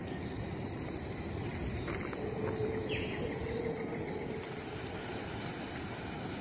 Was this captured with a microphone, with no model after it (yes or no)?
yes